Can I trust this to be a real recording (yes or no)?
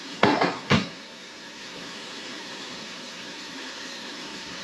no